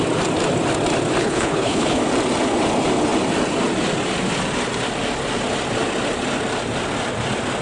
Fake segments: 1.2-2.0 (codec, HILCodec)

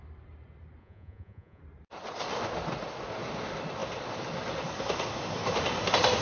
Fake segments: 0.8-1.6 (vocoder, Vocos)

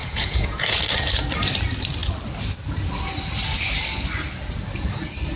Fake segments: 0.0-0.8 (vocoder, Vocos)

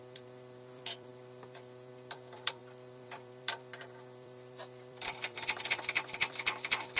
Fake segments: 0.0-7.0 (vocoder, BigVGAN v2)

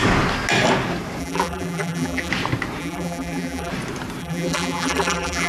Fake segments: 1.2-2.3 (vocoder, BigVGAN v2); 2.8-3.7; 4.2-5.5

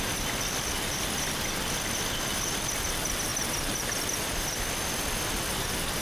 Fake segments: none

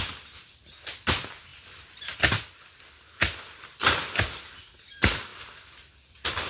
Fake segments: none